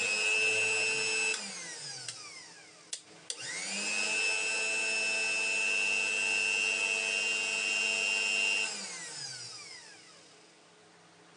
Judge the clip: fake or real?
real